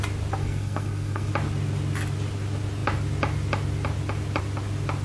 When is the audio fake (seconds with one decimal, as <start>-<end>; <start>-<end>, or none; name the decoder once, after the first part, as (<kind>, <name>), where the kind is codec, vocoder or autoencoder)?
0.4-1.3 (codec, SNAC)